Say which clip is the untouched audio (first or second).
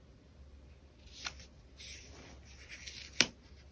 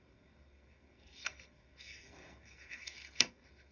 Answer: first